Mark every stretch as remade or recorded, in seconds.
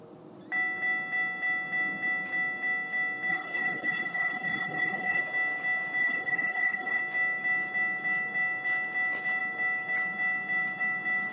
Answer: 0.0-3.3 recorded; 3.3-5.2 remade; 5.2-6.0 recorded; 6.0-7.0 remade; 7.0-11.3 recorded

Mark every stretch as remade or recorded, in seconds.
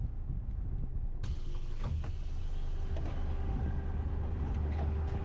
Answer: 0.0-0.9 recorded; 0.9-2.0 remade; 2.0-4.1 recorded; 4.1-5.2 remade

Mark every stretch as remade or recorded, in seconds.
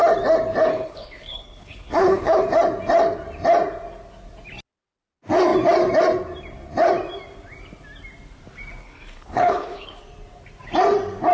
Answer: 0.0-0.7 recorded; 0.7-2.4 remade; 2.4-8.8 recorded; 8.8-10.0 remade; 10.0-11.3 recorded